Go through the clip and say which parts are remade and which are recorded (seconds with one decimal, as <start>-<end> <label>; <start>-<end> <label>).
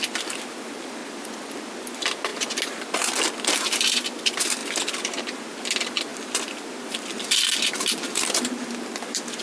0.0-1.0 remade; 1.0-1.8 recorded; 1.8-2.3 remade; 2.3-3.5 recorded; 3.5-4.6 remade; 4.6-5.2 recorded; 5.2-9.4 remade